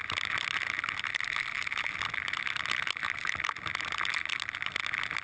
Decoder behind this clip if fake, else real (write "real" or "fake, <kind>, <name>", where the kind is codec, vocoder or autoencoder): real